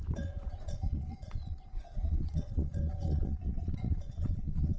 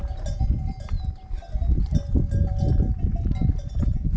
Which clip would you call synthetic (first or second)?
first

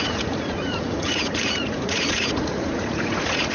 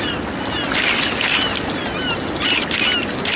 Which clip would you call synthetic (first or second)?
first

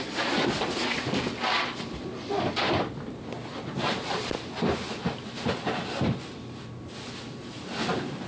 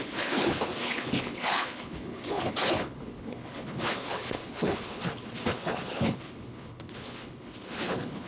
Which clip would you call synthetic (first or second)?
second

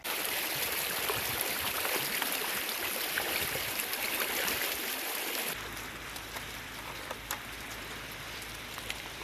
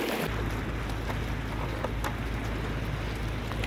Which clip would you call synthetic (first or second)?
first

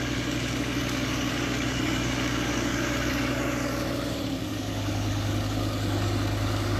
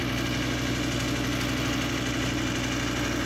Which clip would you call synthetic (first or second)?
first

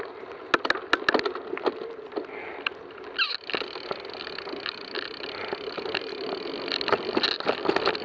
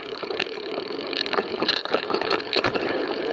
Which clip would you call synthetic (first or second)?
second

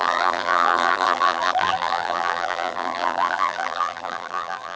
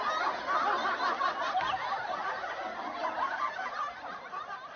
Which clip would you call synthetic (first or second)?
first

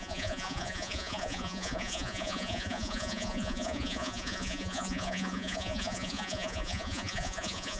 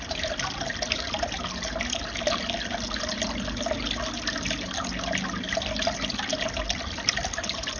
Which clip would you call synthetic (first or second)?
first